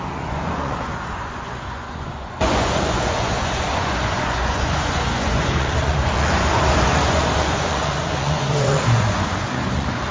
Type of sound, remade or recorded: remade